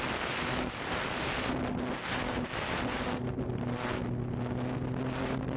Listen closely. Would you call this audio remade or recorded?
recorded